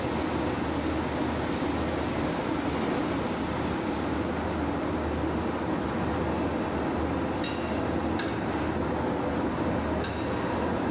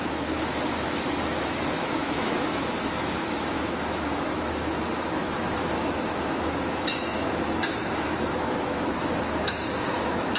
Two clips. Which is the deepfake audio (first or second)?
second